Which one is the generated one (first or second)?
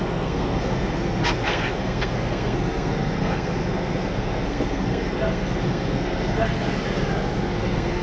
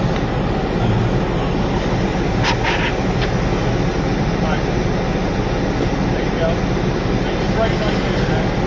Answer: first